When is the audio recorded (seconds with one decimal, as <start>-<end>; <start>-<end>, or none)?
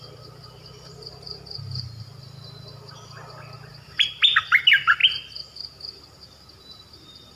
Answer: 0.0-3.7; 4.2-7.4